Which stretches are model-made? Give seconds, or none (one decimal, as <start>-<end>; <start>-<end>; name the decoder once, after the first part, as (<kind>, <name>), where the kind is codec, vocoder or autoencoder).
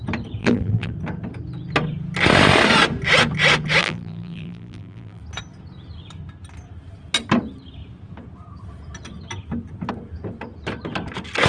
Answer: 0.4-0.9 (vocoder, BigVGAN v2); 3.8-5.2